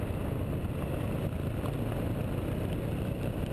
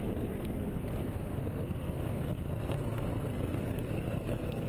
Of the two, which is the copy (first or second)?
second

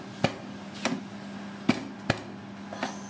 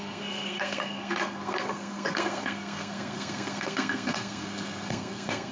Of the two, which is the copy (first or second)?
second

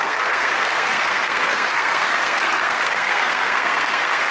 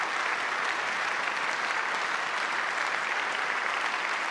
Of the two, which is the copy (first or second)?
first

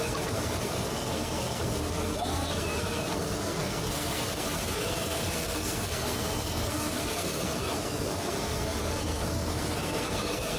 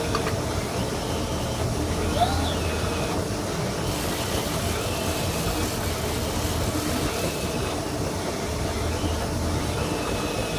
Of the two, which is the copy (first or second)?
first